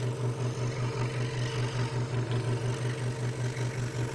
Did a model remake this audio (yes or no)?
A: no